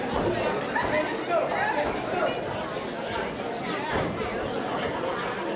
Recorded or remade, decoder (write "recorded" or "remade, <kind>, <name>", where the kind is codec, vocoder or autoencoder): recorded